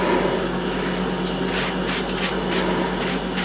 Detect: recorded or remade recorded